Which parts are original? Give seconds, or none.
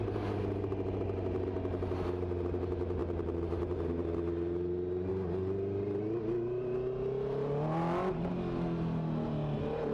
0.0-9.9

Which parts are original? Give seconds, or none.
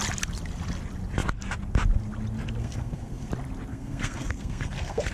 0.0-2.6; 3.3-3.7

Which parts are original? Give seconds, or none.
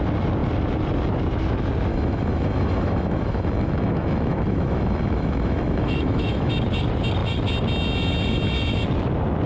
0.0-1.9; 6.5-9.5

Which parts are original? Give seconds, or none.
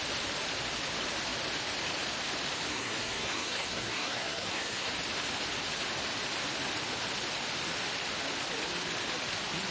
0.0-2.7; 4.9-9.7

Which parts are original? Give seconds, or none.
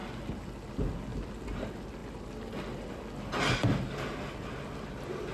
0.0-5.3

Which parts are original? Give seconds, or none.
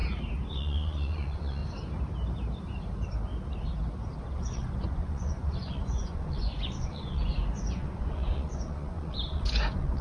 0.0-0.5; 1.6-4.3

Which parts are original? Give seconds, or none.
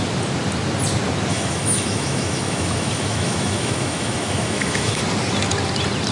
0.0-1.3; 5.0-6.1